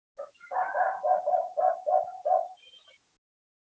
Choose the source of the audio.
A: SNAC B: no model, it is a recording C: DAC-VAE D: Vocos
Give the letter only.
B